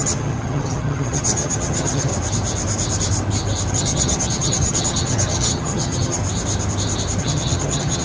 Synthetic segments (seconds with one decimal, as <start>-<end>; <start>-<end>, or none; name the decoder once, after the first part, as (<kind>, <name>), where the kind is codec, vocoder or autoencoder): 0.0-2.1 (vocoder, HiFi-GAN); 3.7-6.2; 7.2-8.0